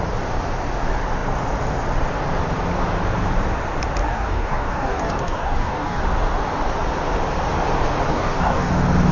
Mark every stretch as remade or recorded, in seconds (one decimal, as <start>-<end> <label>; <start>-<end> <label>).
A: 0.0-4.0 recorded; 4.0-6.0 remade; 6.0-8.1 recorded; 8.1-8.7 remade; 8.7-9.1 recorded